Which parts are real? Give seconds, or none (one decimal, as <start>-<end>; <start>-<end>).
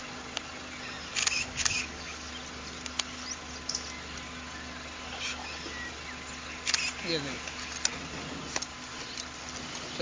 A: 0.0-1.2; 2.3-10.0